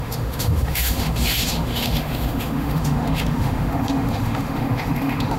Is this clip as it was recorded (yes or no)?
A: no